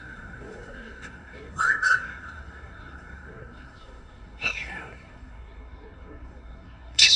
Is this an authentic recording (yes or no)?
no